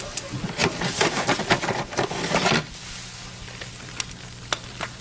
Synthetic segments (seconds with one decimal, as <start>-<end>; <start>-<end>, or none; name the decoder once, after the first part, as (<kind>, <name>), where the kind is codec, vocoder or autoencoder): none